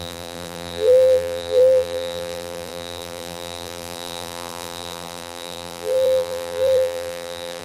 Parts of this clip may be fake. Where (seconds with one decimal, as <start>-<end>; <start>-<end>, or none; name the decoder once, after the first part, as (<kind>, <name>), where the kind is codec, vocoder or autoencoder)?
0.0-7.6 (vocoder, BigVGAN v2)